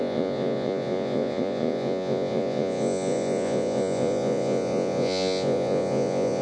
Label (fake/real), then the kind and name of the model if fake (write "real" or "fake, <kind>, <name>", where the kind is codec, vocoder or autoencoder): fake, vocoder, Vocos